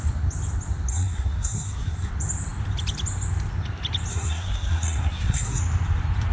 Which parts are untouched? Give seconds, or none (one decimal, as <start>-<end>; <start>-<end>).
0.0-0.9; 2.1-4.1; 5.6-6.3